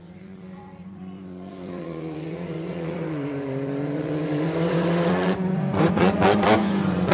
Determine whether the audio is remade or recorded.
remade